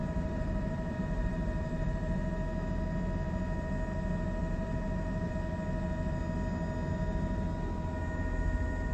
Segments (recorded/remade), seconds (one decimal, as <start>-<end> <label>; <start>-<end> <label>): 0.0-2.2 remade; 2.2-4.4 recorded; 4.4-5.3 remade; 5.3-8.9 recorded